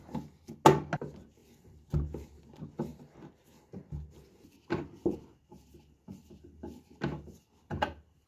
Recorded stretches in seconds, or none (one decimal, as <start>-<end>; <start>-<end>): 0.0-8.3